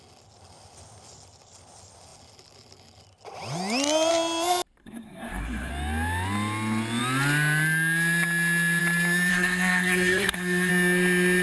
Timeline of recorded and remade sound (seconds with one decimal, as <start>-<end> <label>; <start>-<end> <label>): 0.0-4.8 recorded; 4.8-5.7 remade; 5.7-9.3 recorded; 9.3-10.7 remade; 10.7-11.4 recorded